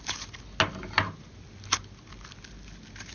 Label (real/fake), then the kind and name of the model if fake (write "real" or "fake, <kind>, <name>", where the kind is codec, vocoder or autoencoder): real